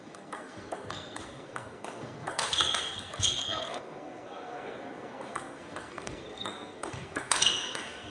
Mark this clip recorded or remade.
remade